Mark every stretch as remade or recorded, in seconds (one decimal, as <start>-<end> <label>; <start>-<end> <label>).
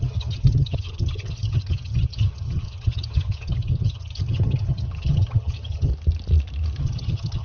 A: 0.0-5.9 remade; 5.9-6.8 recorded; 6.8-7.4 remade